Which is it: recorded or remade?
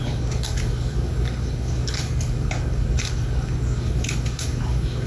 remade